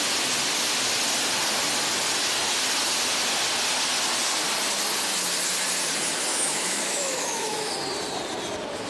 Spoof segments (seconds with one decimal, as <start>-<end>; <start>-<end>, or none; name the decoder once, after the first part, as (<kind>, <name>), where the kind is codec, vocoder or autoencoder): 6.3-7.7 (autoencoder, DAC-VAE)